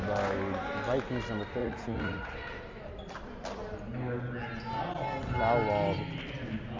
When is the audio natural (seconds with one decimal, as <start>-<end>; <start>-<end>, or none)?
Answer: 0.0-1.6; 2.3-6.8